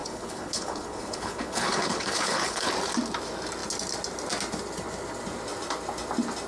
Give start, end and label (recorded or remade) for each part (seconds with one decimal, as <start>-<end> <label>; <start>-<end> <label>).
0.0-2.7 remade; 2.7-6.5 recorded